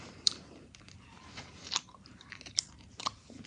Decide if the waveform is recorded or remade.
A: remade